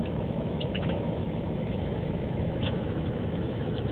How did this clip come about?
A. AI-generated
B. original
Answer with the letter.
A